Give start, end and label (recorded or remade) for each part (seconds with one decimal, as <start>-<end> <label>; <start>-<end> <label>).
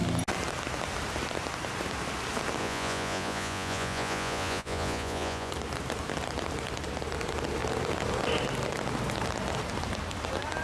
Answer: 0.0-2.6 recorded; 2.6-5.5 remade; 5.5-10.6 recorded